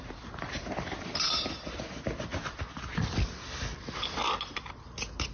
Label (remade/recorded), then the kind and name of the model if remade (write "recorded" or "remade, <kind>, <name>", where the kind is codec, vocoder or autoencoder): recorded